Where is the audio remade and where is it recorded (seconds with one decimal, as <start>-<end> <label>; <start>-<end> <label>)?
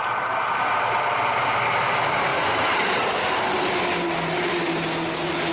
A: 0.0-5.5 recorded